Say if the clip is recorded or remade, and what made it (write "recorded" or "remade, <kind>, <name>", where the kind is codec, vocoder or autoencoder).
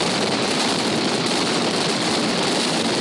remade, vocoder, BigVGAN v2